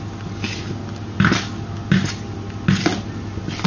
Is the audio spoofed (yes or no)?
no